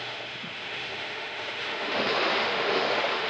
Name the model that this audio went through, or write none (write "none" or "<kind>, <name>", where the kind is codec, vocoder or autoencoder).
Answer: autoencoder, DAC-VAE